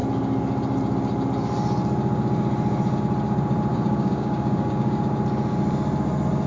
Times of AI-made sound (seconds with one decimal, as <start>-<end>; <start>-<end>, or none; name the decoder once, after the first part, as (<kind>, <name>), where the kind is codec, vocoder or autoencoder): 3.7-5.0 (codec, DAC)